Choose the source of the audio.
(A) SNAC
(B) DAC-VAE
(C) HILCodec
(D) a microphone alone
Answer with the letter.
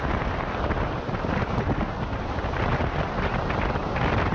D